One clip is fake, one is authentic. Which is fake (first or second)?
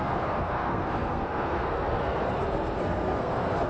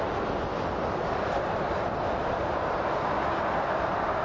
first